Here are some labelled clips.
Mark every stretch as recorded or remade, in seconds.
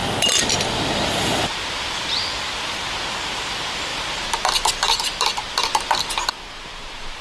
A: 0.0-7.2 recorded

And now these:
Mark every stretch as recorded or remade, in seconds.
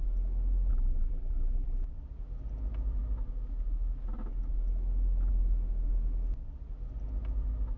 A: 0.0-0.7 recorded; 0.7-1.9 remade; 1.9-7.8 recorded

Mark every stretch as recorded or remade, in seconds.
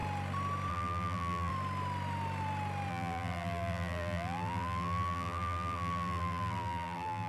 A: 0.0-0.7 recorded; 0.7-1.5 remade; 1.5-2.9 recorded; 2.9-7.3 remade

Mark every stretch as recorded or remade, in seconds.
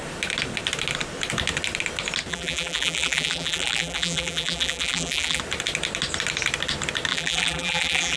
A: 0.0-2.3 recorded; 2.3-5.4 remade; 5.4-7.1 recorded; 7.1-8.2 remade